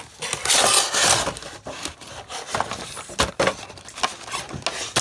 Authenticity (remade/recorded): recorded